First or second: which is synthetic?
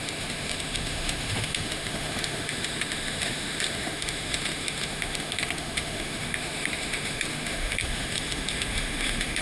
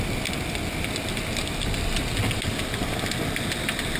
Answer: first